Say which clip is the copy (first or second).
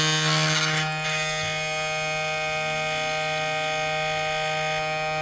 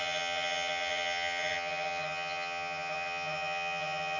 second